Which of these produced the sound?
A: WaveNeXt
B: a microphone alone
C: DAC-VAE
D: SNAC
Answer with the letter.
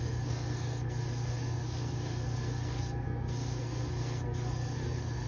D